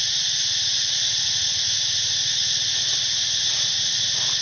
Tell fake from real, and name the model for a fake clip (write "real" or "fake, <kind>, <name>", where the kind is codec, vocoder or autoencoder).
real